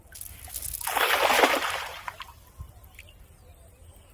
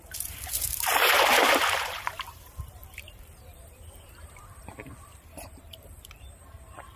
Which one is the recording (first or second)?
first